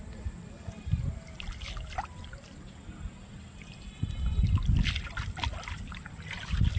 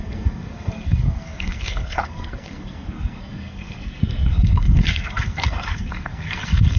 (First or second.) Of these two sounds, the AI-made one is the second